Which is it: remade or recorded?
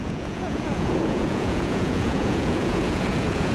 remade